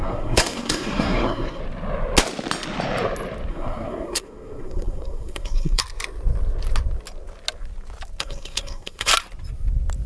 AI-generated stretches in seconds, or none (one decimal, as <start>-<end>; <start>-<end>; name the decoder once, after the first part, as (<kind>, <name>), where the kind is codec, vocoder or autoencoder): 0.0-1.6 (codec, SNAC); 3.5-5.8; 8.2-9.1